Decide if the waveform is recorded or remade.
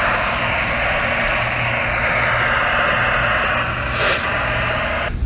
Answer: recorded